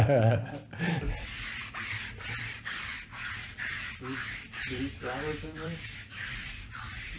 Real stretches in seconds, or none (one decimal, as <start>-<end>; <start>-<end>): 2.9-3.7